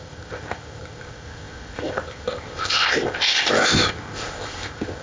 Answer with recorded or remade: remade